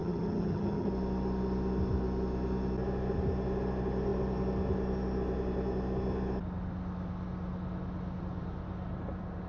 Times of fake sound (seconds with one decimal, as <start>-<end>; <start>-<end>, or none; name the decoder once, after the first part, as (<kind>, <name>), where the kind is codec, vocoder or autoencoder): 0.0-0.9 (vocoder, HiFi-GAN)